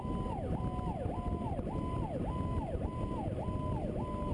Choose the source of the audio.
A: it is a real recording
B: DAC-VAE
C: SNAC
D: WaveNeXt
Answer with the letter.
A